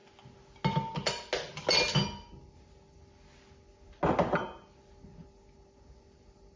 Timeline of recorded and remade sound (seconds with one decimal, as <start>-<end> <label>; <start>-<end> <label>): 0.0-6.6 recorded